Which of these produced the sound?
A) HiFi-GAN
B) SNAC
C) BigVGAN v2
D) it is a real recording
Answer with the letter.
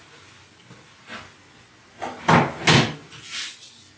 D